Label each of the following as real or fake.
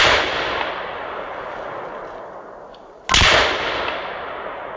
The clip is real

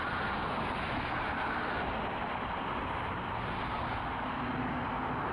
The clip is real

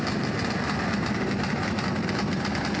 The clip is real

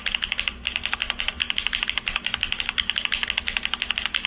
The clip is real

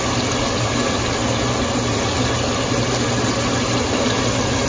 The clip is real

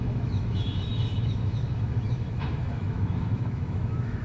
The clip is fake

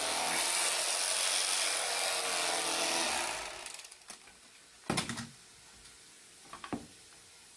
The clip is real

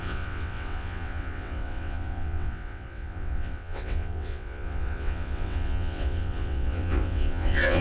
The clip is fake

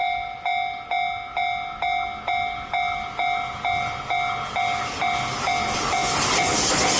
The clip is real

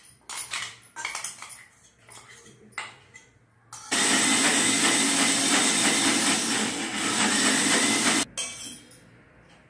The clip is real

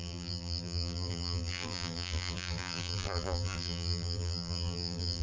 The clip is fake